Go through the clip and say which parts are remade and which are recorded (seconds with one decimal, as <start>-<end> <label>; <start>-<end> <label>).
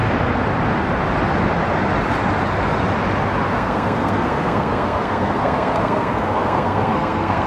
0.0-3.5 recorded; 3.5-7.5 remade